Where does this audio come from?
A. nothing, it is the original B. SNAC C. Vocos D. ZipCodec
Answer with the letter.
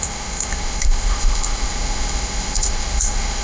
D